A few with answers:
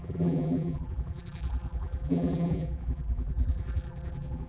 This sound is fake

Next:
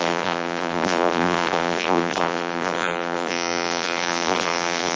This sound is fake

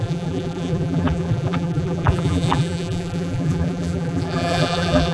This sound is fake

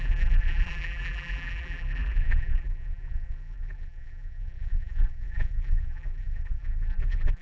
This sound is fake